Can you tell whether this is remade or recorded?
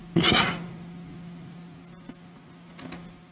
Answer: recorded